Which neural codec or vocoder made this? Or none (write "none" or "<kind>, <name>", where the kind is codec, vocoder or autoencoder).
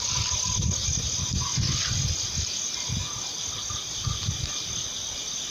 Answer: none